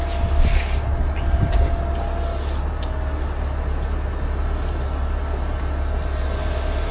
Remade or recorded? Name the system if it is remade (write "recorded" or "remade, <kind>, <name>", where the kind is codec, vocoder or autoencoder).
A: recorded